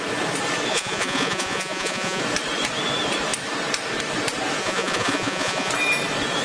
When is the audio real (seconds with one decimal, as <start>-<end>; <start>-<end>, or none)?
0.0-0.7; 2.2-4.6; 5.7-6.4

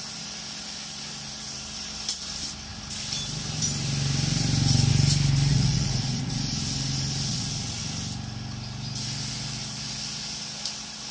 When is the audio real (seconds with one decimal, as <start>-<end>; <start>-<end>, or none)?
0.0-5.5; 6.4-7.3; 7.9-11.1

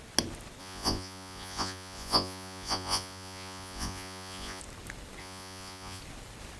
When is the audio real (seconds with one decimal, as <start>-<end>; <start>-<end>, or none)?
0.0-0.6; 4.6-5.2; 6.0-6.6

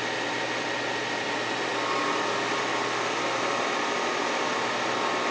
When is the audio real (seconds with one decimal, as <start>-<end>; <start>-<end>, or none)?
0.0-5.3

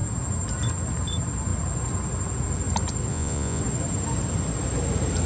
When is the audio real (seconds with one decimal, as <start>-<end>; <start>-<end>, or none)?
0.0-3.1; 3.6-5.3